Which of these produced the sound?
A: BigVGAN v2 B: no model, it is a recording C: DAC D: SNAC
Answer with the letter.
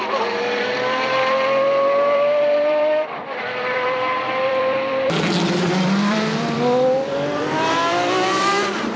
A